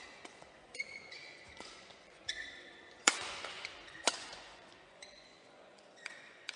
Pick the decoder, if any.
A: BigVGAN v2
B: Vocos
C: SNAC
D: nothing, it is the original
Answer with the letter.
B